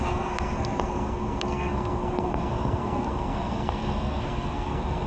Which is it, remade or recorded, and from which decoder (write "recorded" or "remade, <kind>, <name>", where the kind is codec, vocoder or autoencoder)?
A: remade, codec, SNAC